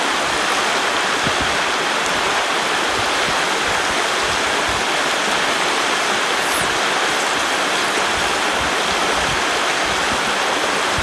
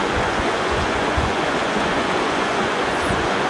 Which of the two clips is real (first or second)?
first